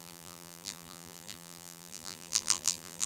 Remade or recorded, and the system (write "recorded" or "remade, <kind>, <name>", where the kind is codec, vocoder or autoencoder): remade, vocoder, BigVGAN v2